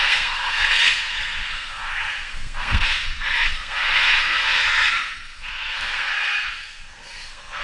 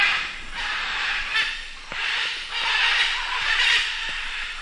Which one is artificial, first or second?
first